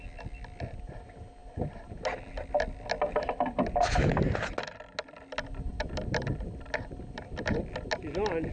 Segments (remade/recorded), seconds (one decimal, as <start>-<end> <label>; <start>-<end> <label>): 0.0-8.5 recorded